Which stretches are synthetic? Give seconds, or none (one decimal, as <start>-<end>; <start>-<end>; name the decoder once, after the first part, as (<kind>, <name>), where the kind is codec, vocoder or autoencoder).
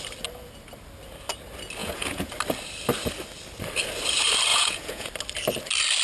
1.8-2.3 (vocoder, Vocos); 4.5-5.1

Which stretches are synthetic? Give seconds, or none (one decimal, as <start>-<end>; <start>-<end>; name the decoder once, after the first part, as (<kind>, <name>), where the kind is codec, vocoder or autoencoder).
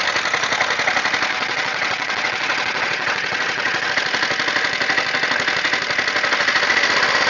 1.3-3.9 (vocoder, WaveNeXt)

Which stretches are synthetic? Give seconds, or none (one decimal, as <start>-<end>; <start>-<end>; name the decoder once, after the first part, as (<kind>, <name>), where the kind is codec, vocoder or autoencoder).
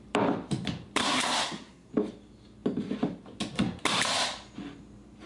1.0-1.9 (codec, SNAC)